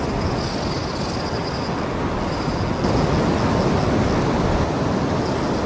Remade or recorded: recorded